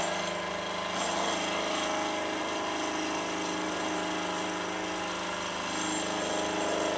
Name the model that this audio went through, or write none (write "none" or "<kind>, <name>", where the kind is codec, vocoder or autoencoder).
none